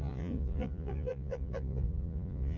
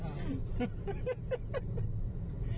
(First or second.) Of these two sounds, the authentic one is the second